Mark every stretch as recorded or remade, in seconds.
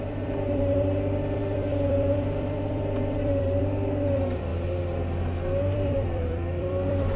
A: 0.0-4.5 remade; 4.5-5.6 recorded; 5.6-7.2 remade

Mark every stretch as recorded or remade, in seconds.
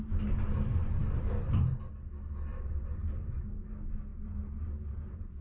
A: 0.0-2.5 recorded; 2.5-3.5 remade; 3.5-4.1 recorded; 4.1-5.4 remade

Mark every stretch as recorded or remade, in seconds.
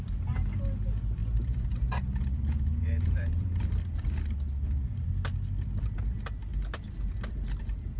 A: 0.0-1.2 recorded; 1.2-3.7 remade; 3.7-8.0 recorded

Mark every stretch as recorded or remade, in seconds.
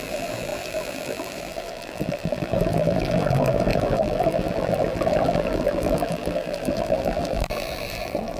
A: 0.0-8.4 remade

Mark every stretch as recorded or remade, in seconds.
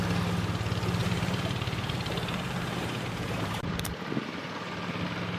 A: 0.0-1.0 recorded; 1.0-3.9 remade; 3.9-5.4 recorded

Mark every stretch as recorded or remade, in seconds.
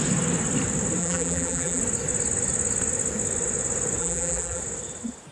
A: 0.0-1.0 recorded; 1.0-1.8 remade; 1.8-4.0 recorded; 4.0-4.6 remade; 4.6-5.3 recorded